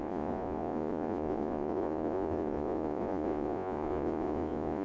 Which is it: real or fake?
fake